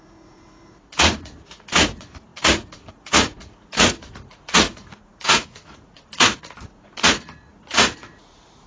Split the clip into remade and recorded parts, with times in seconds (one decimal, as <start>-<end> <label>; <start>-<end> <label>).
0.0-8.7 remade